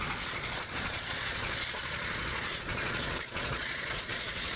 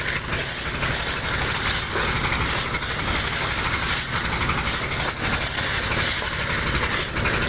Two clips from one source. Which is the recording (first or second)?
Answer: second